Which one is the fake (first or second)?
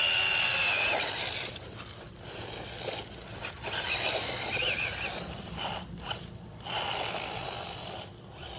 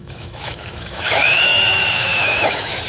second